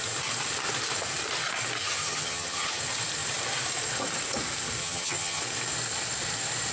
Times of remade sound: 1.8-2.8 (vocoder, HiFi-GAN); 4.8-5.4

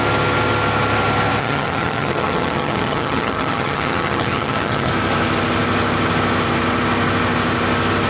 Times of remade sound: 1.4-4.9 (vocoder, HiFi-GAN)

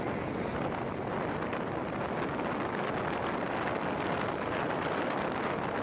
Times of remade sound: none

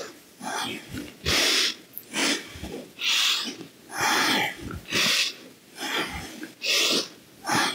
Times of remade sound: none

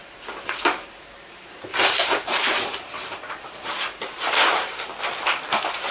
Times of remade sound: 1.7-4.6 (vocoder, BigVGAN v2)

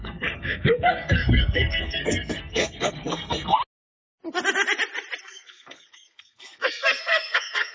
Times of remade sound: 0.0-3.6 (codec, SNAC); 5.2-7.7

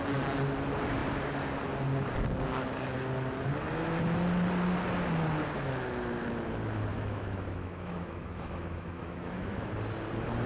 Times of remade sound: 6.9-9.7 (autoencoder, DAC-VAE)